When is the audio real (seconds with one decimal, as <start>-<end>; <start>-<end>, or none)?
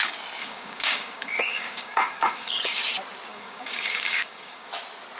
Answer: 0.0-0.4; 2.8-3.3; 4.7-5.2